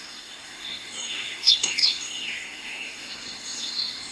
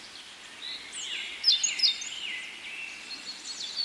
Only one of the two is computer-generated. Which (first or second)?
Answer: first